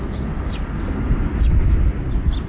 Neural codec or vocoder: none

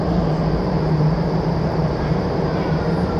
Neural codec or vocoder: vocoder, BigVGAN v2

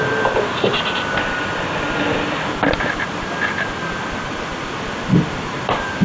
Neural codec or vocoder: vocoder, BigVGAN v2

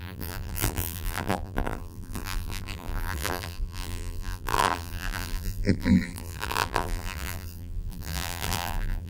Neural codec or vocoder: vocoder, BigVGAN v2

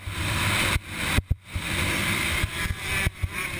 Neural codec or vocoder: vocoder, BigVGAN v2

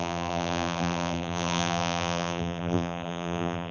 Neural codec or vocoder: vocoder, BigVGAN v2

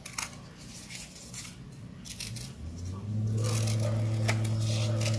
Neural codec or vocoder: none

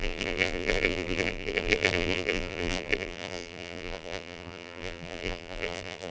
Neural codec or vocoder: vocoder, BigVGAN v2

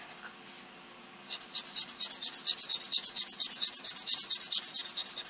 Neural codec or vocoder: none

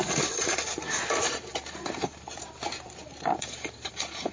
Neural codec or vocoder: vocoder, BigVGAN v2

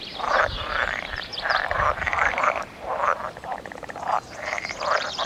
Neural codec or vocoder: vocoder, BigVGAN v2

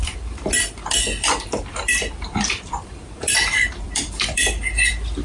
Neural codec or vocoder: vocoder, BigVGAN v2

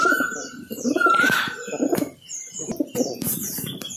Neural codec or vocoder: vocoder, BigVGAN v2